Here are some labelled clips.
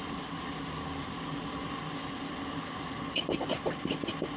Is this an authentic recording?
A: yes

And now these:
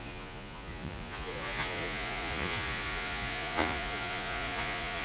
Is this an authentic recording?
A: no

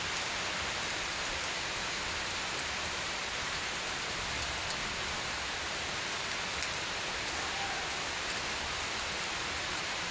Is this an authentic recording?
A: yes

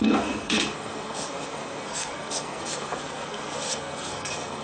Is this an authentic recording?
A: no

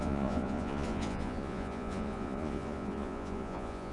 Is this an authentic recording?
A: no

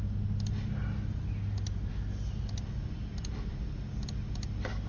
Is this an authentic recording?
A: yes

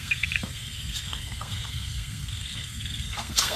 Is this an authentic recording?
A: no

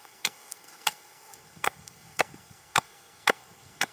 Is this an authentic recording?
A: no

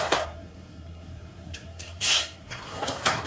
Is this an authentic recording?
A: no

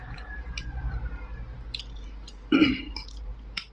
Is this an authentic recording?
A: no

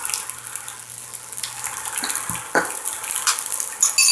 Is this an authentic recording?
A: yes